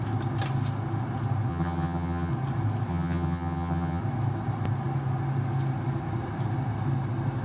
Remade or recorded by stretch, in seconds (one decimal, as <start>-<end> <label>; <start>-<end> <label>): 0.0-1.5 recorded; 1.5-2.3 remade; 2.3-2.9 recorded; 2.9-4.0 remade; 4.0-7.4 recorded